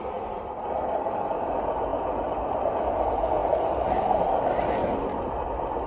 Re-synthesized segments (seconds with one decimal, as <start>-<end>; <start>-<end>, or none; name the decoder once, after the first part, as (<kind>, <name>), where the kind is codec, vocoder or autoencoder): none